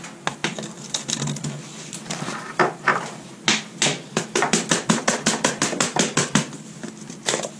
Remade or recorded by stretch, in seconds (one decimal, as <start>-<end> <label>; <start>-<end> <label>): 0.0-7.6 recorded